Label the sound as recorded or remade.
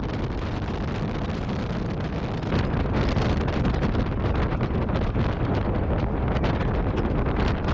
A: recorded